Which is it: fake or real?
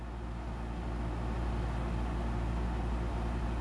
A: real